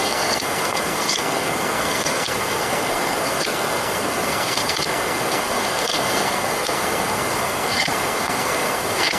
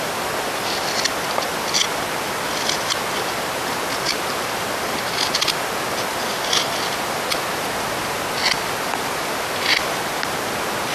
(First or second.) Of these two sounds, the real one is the second